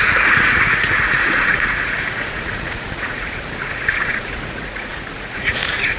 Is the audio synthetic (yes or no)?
yes